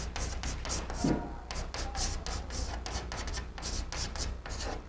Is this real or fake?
real